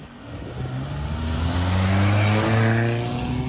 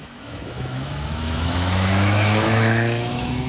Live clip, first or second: first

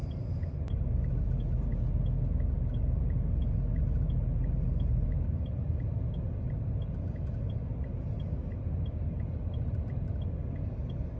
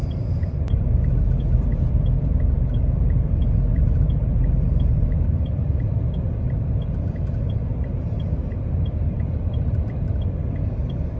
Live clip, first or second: first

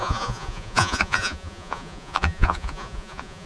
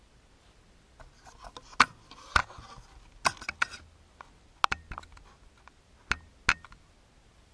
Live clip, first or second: second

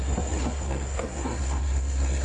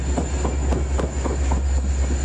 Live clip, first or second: second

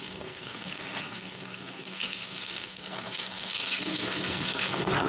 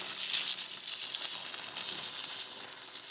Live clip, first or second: second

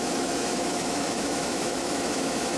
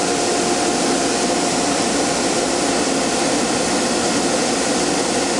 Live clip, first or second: second